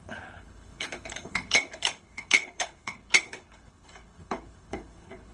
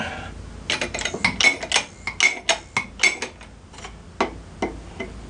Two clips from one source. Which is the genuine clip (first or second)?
second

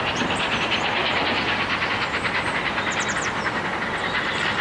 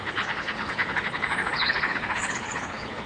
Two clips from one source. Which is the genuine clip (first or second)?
first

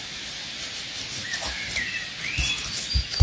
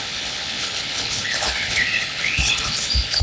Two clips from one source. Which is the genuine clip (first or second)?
first